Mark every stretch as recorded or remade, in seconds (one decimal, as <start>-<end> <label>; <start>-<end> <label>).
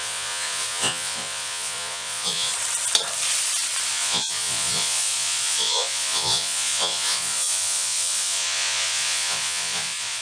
0.0-2.5 remade; 2.5-3.9 recorded; 3.9-10.2 remade